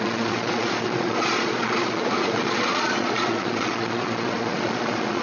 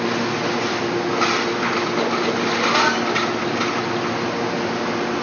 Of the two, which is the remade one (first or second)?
first